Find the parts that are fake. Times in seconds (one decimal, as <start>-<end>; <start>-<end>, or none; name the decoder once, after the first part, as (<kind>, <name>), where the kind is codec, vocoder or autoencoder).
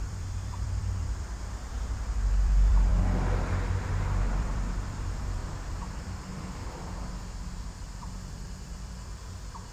0.0-2.9 (vocoder, BigVGAN v2); 4.3-9.7